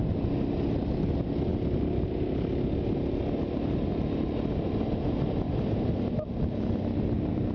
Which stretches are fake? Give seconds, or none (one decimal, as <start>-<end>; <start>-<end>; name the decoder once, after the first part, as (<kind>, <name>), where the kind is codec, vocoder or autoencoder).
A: none